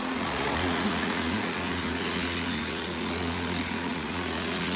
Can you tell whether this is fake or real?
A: fake